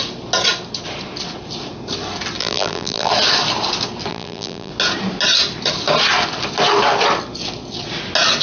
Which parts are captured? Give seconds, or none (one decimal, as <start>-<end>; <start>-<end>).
0.0-2.4; 3.1-4.1; 4.7-8.4